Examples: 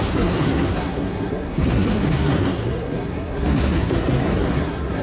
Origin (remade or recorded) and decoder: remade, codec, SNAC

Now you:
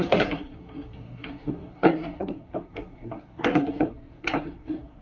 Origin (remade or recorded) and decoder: remade, codec, SNAC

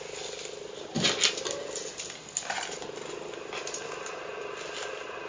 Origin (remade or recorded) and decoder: recorded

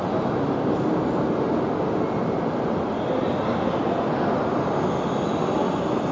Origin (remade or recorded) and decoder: recorded